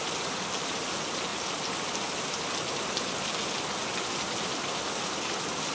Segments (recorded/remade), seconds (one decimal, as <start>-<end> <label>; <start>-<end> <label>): 0.0-5.7 remade